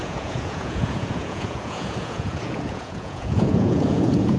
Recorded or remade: remade